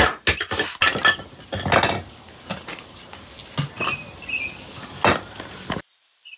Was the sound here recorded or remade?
recorded